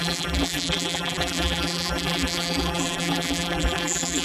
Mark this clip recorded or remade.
remade